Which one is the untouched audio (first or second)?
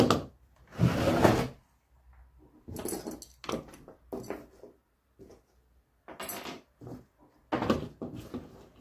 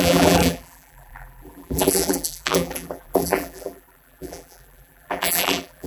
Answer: first